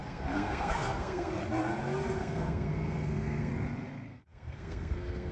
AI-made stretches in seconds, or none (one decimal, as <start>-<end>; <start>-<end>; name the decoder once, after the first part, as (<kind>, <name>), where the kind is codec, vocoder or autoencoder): 0.0-1.3 (codec, SNAC); 2.2-3.5; 4.1-5.3